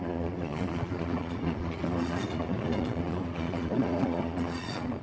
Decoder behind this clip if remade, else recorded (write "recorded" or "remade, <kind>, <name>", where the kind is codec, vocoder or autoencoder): remade, vocoder, Vocos